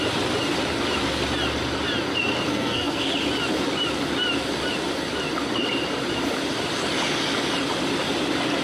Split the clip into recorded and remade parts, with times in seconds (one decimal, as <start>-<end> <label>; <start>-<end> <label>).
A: 0.0-2.5 recorded; 2.5-3.1 remade; 3.1-8.6 recorded